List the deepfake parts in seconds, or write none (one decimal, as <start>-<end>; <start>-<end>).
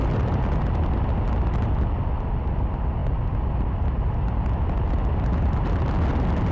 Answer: none